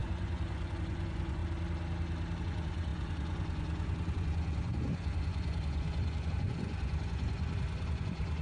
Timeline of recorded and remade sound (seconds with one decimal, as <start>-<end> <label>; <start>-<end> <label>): 0.0-1.4 remade; 1.4-2.4 recorded; 2.4-8.4 remade